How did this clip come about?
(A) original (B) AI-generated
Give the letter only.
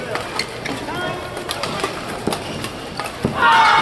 A